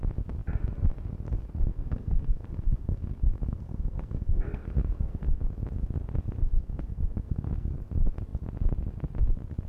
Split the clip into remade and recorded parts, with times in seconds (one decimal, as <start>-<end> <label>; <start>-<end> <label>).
0.0-1.7 recorded; 1.7-5.4 remade; 5.4-6.5 recorded; 6.5-7.7 remade; 7.7-9.7 recorded